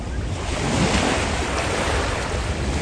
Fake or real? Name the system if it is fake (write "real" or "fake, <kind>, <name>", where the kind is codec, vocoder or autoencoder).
fake, vocoder, BigVGAN v2